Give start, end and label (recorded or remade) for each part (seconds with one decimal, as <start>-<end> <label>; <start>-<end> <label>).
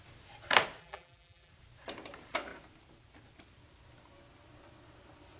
0.0-0.8 recorded; 0.8-1.5 remade; 1.5-5.4 recorded